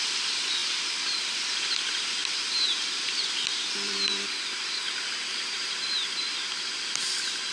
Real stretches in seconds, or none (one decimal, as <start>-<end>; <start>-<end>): 0.0-0.6; 1.6-2.2; 6.7-7.5